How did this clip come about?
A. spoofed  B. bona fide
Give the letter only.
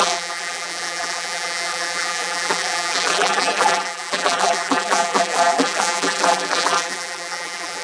A